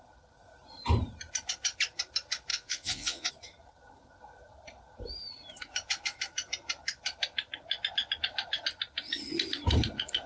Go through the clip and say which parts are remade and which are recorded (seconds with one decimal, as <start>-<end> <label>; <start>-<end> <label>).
0.0-2.5 recorded; 2.5-3.3 remade; 3.3-10.3 recorded